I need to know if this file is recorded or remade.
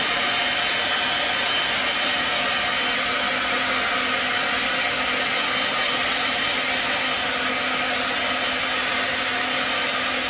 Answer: recorded